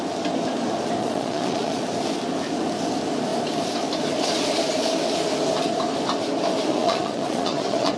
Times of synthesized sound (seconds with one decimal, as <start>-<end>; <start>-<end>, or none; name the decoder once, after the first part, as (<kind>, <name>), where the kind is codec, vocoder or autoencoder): 1.0-1.8 (vocoder, Vocos); 6.7-8.0